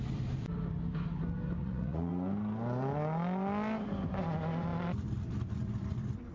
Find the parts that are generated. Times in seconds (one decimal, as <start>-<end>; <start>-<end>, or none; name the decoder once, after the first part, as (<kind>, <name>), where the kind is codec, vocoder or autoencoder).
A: 1.6-2.1 (vocoder, Vocos)